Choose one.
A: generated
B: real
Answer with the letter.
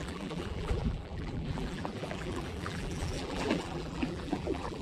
A